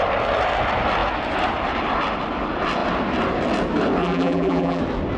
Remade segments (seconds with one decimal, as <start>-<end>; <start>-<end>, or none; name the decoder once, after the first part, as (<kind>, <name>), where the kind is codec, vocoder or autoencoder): 4.0-4.8 (vocoder, BigVGAN v2)